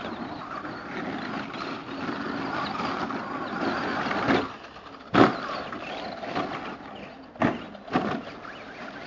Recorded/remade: recorded